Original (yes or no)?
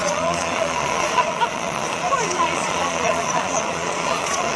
no